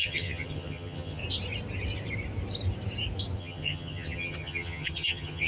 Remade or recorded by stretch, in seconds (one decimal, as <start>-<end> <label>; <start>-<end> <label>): 0.0-1.2 remade; 1.2-3.4 recorded; 3.4-5.5 remade